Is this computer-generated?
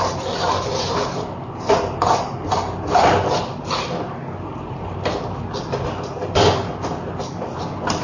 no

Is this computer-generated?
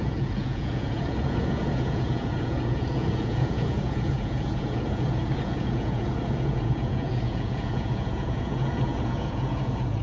yes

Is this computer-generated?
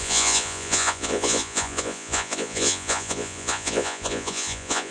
yes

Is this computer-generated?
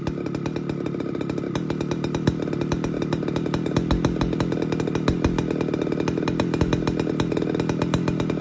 no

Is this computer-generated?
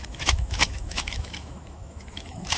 yes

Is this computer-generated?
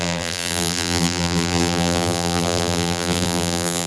yes